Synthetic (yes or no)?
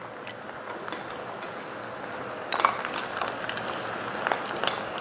no